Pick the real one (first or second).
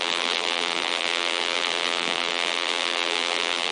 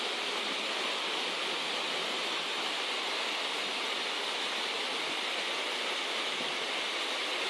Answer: second